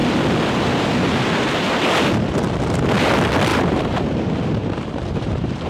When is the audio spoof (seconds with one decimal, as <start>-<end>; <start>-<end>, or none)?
3.5-5.7